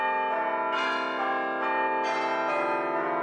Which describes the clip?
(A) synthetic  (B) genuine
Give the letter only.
B